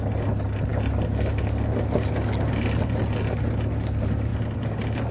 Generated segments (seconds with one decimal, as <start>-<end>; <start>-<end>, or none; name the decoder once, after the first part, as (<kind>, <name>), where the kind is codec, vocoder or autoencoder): none